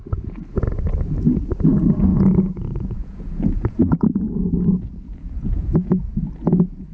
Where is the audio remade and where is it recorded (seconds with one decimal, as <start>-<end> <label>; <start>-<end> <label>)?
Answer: 0.0-2.1 recorded; 2.1-6.1 remade; 6.1-6.9 recorded